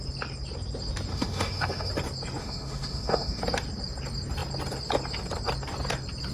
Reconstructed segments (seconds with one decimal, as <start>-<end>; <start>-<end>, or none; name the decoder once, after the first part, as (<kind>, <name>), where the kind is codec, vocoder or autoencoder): 1.1-1.9 (autoencoder, DAC-VAE); 2.4-3.4